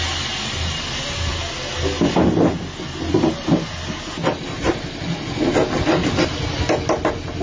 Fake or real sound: real